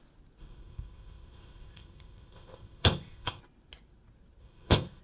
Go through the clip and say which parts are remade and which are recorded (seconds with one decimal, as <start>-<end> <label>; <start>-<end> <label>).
0.0-0.4 recorded; 0.4-3.4 remade; 3.4-4.4 recorded; 4.4-5.0 remade